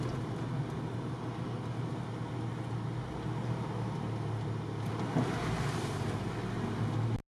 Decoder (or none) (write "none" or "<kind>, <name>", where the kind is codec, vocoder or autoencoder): none